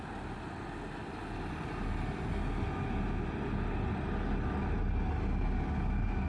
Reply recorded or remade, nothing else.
recorded